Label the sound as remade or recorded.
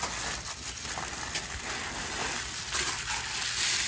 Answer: recorded